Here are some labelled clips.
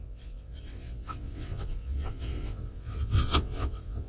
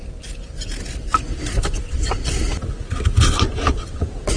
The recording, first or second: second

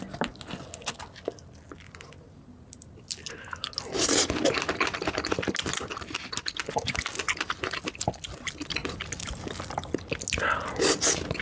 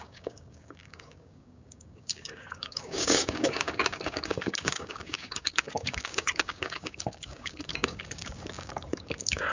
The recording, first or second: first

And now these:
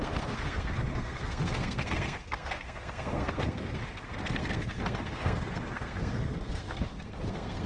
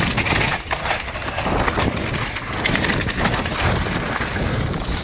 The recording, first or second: second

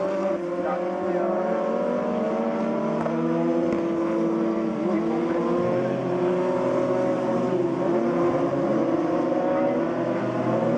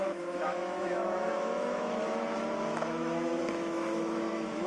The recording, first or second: first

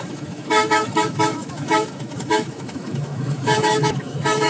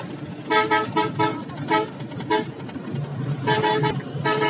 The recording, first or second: second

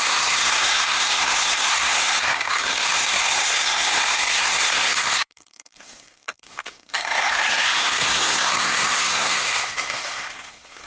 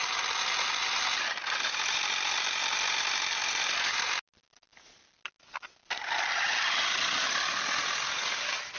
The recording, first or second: second